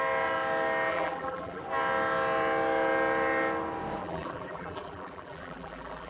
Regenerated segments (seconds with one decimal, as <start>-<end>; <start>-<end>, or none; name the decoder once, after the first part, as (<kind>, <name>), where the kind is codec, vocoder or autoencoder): 0.9-1.6 (vocoder, BigVGAN v2); 4.0-6.1